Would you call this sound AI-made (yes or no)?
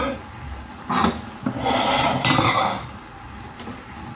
no